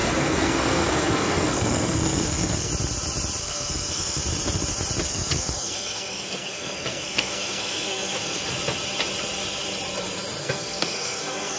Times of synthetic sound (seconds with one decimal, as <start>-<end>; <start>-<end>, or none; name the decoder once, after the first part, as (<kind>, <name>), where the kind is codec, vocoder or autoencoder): 0.0-2.7 (codec, SNAC); 3.4-4.2; 5.0-8.4; 10.4-11.6